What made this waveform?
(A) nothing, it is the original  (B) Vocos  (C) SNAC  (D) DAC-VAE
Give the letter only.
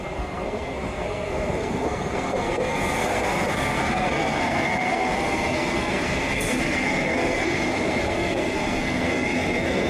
C